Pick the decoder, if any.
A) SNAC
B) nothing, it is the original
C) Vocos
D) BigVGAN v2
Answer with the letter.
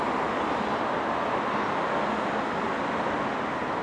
B